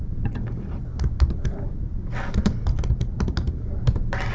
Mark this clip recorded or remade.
recorded